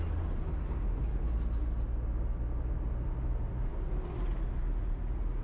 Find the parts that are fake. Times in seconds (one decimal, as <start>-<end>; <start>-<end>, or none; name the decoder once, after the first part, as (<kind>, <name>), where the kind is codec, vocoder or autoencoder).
none